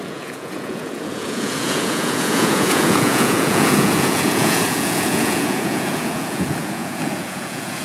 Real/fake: fake